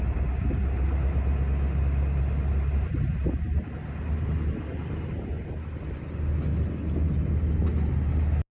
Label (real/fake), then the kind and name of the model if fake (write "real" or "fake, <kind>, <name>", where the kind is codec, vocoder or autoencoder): real